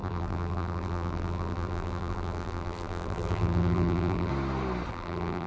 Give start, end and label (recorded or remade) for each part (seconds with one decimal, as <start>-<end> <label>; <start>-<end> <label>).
0.0-4.3 remade; 4.3-4.9 recorded; 4.9-5.5 remade